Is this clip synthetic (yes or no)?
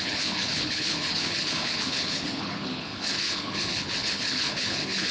yes